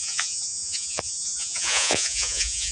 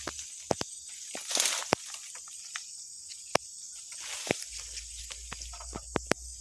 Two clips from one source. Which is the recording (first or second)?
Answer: second